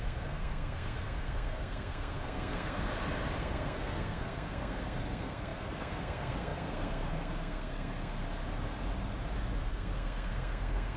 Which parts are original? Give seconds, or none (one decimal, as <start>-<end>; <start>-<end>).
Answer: 2.9-3.4; 8.2-9.6